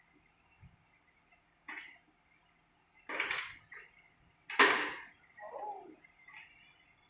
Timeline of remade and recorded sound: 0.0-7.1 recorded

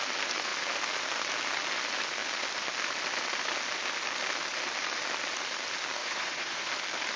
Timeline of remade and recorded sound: 0.0-6.0 recorded; 6.0-6.7 remade; 6.7-7.2 recorded

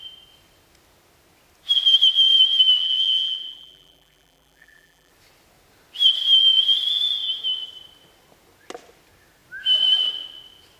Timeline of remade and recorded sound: 0.0-2.8 recorded; 2.8-5.1 remade; 5.1-10.8 recorded

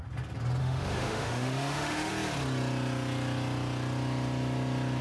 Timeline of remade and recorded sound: 0.0-0.6 recorded; 0.6-2.1 remade; 2.1-5.0 recorded